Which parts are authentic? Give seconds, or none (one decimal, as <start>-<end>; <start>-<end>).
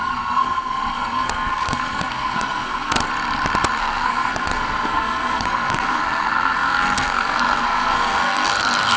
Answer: 3.1-3.8